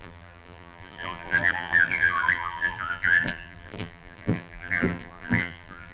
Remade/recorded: remade